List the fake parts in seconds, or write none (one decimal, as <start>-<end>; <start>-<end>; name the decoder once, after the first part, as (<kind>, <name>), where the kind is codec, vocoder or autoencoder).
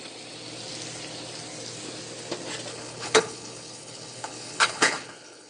2.7-5.5 (codec, HILCodec)